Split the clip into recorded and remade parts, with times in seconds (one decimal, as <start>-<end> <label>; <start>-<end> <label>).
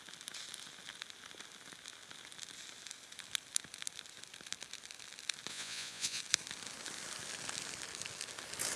0.0-5.5 recorded; 5.5-6.2 remade; 6.2-8.8 recorded